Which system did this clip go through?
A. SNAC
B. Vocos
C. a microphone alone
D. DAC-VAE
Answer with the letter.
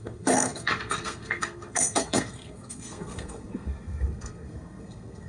A